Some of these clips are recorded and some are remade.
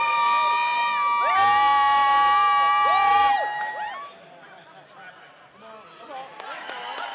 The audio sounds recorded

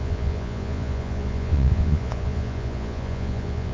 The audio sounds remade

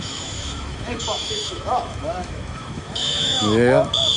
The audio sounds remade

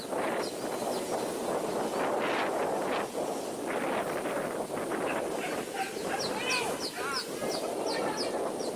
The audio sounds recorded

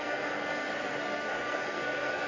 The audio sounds remade